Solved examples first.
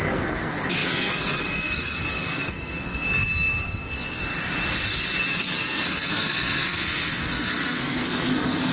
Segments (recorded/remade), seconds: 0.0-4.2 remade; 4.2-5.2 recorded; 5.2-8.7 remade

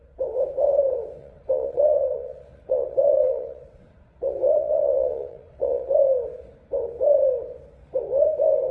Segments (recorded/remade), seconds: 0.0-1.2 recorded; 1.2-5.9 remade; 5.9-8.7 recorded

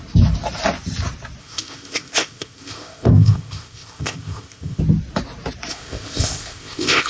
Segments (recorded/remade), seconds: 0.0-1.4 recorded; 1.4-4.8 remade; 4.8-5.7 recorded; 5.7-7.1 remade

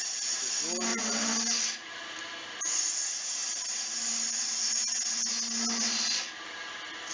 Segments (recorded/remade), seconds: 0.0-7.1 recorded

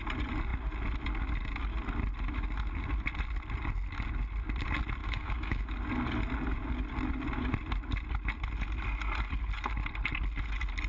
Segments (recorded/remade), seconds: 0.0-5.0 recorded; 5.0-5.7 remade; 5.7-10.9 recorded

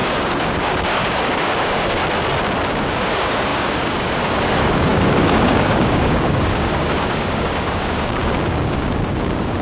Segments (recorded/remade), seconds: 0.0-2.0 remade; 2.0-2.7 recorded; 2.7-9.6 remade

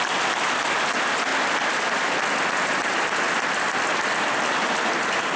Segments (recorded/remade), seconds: 0.0-5.4 recorded